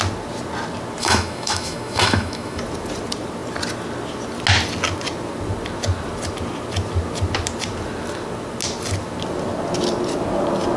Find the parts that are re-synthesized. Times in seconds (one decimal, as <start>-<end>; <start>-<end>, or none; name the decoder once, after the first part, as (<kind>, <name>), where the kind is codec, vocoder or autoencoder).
1.0-2.6 (autoencoder, DAC-VAE)